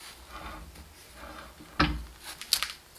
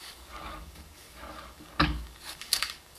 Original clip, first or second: first